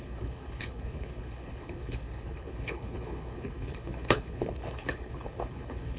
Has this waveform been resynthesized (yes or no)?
yes